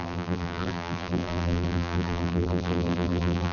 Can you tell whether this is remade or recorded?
remade